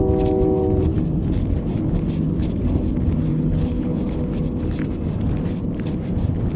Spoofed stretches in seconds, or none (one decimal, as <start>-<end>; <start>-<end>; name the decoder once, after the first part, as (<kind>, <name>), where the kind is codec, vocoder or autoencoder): 3.3-4.0 (codec, HILCodec)